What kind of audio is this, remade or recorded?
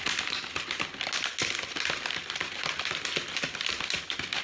recorded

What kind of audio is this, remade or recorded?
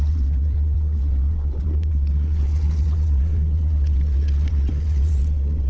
remade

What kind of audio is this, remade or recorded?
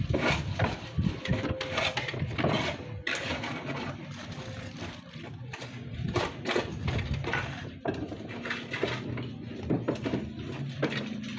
recorded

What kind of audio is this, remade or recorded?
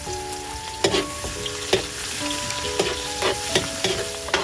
recorded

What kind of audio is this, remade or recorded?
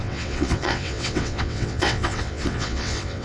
remade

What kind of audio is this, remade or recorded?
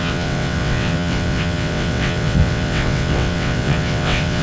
remade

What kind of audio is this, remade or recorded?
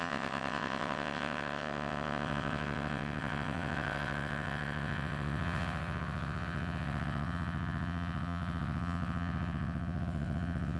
remade